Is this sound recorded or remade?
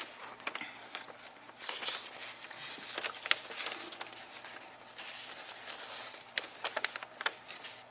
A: recorded